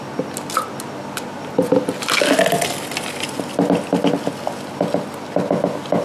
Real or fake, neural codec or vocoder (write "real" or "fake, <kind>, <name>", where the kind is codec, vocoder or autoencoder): real